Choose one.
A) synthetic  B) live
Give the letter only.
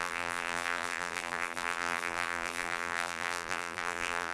A